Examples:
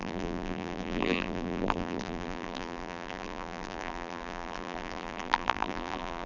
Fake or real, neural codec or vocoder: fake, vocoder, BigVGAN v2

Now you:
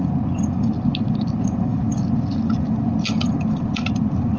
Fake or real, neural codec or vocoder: real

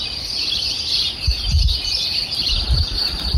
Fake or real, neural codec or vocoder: real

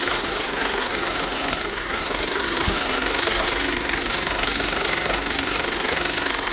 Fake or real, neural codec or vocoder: fake, codec, SNAC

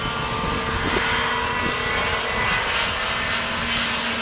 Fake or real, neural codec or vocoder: real